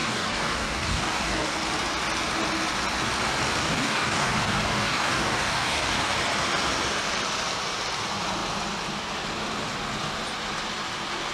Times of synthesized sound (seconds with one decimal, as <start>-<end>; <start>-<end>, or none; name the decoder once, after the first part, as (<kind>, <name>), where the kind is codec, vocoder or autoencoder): 0.0-1.6 (codec, DAC); 3.6-6.1